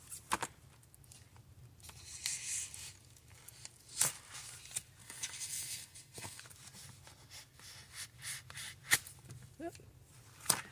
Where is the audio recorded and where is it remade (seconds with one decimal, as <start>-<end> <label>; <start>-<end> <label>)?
0.0-5.0 recorded; 5.0-6.4 remade; 6.4-10.7 recorded